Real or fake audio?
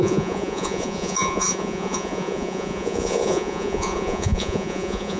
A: fake